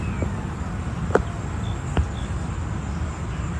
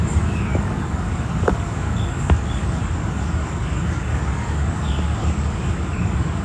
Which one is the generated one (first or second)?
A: second